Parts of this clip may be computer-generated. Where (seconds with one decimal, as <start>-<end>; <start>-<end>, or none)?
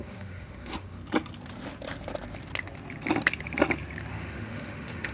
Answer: 0.0-1.0; 4.1-5.1